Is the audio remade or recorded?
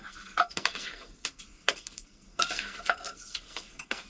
remade